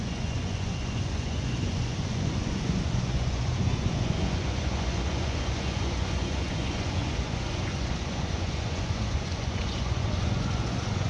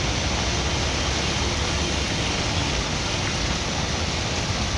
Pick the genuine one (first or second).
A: second